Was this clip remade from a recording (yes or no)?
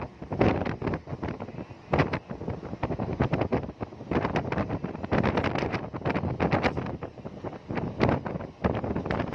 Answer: no